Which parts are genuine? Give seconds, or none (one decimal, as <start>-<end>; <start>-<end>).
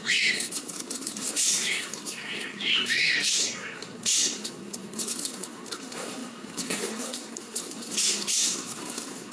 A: none